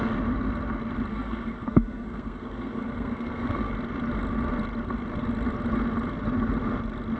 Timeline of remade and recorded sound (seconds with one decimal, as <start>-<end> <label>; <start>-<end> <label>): 0.0-1.1 recorded; 1.1-3.7 remade; 3.7-7.2 recorded